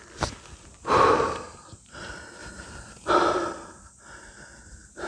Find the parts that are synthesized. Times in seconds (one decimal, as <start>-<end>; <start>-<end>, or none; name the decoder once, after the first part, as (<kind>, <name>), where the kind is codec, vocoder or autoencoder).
none

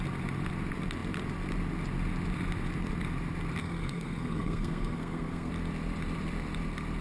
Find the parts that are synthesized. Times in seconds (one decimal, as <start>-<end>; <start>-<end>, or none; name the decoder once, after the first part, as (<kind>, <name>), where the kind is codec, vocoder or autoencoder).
3.6-5.5 (codec, SNAC)

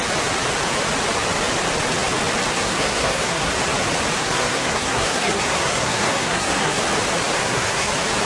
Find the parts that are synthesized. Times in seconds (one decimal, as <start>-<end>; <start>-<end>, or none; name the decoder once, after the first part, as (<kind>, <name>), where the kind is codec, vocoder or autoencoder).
2.5-3.5 (codec, SNAC); 4.2-6.8; 7.4-7.9